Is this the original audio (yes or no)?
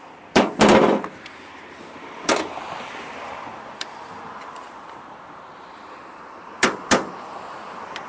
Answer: no